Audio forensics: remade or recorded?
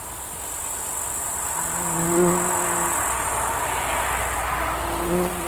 recorded